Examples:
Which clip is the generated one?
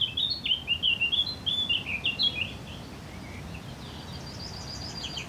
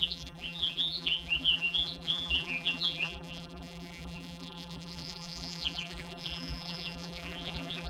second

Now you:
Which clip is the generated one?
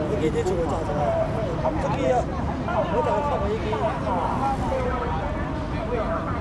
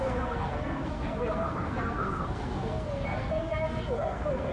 second